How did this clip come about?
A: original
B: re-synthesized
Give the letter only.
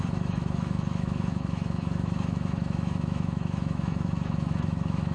B